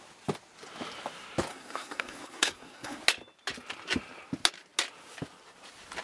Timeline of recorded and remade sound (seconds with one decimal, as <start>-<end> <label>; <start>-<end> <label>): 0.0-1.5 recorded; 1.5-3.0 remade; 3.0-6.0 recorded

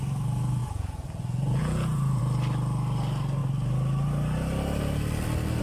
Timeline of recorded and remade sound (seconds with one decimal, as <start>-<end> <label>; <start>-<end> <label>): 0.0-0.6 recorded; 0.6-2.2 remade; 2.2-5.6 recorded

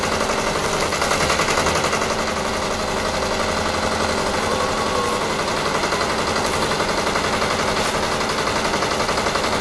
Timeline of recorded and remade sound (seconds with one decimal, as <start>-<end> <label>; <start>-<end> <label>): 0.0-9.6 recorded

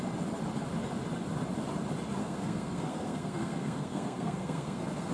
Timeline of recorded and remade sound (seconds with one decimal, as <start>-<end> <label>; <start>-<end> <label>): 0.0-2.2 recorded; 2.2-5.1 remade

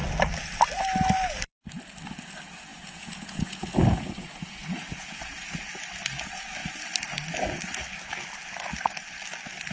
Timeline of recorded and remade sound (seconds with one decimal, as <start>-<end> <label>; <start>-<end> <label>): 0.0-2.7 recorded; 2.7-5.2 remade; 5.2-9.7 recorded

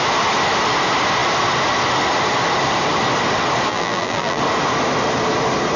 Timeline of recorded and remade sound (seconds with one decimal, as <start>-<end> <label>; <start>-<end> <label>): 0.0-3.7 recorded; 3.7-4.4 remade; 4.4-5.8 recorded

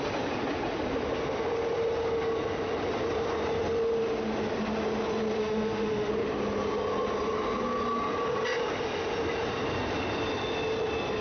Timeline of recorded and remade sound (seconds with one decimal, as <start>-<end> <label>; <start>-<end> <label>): 0.0-5.4 recorded; 5.4-6.1 remade; 6.1-11.2 recorded